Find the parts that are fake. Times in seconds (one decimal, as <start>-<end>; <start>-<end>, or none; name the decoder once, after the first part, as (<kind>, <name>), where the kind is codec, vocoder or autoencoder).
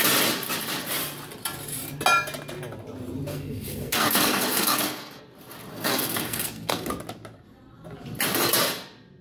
3.3-5.2 (codec, SNAC); 5.7-6.9